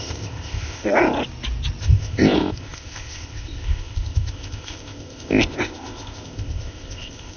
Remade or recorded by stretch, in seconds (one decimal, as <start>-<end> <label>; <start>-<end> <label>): 0.0-1.0 remade; 1.0-1.8 recorded; 1.8-7.4 remade